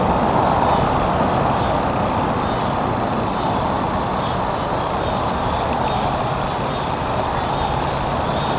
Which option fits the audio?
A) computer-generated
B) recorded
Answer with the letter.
B